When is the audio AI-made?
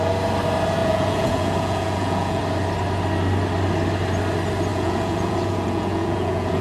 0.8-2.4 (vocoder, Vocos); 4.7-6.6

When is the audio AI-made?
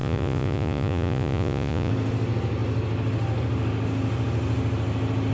0.0-1.9 (vocoder, Vocos)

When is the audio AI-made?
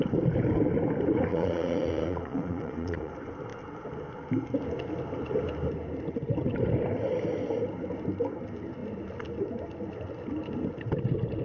1.3-3.1 (vocoder, Vocos)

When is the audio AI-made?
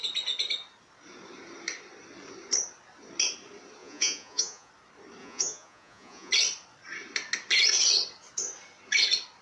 3.8-4.7 (vocoder, Vocos); 5.2-6.3